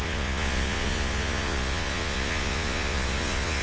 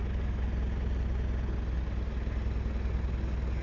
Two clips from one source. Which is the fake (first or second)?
first